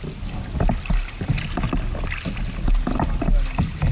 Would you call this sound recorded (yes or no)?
yes